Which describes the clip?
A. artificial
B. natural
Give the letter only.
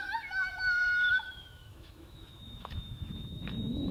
A